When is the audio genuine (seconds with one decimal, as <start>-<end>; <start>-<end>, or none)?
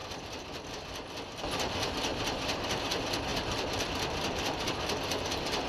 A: 0.0-2.1; 2.9-5.7